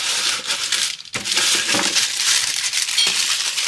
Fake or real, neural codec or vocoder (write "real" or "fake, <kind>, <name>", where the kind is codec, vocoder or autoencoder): fake, vocoder, BigVGAN v2